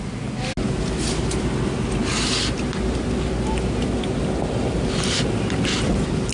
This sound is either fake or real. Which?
real